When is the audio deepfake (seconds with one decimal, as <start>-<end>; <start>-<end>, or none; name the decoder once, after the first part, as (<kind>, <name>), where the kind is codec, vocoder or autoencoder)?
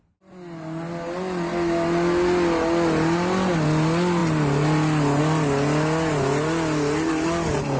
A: none